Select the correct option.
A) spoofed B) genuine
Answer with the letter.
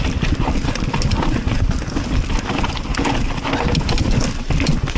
B